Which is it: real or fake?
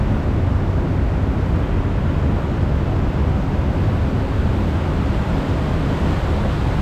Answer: real